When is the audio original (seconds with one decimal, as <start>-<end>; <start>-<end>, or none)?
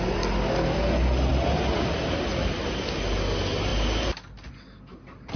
0.0-5.4